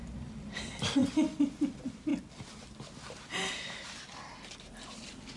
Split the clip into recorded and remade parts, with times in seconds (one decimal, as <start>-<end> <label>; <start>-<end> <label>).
0.0-1.0 remade; 1.0-1.6 recorded; 1.6-2.1 remade; 2.1-5.4 recorded